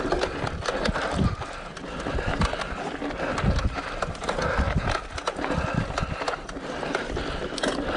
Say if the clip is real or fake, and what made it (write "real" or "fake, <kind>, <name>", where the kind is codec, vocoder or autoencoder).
real